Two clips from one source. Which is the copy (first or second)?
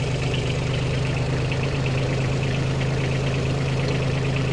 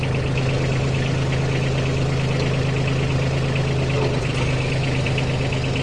first